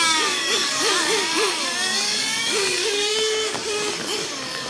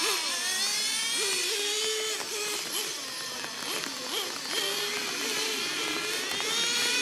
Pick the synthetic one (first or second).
first